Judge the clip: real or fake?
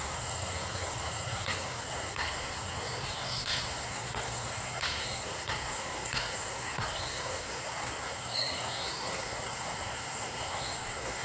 fake